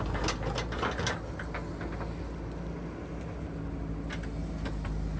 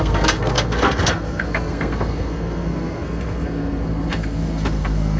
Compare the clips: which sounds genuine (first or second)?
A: first